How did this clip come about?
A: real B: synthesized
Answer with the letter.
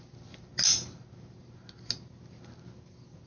A